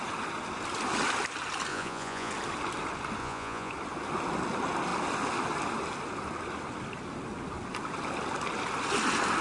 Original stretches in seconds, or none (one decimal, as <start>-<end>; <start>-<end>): 0.0-1.7; 2.3-3.2; 3.7-9.4